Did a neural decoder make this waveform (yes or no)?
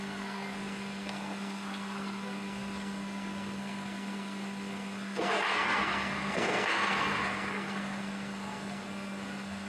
yes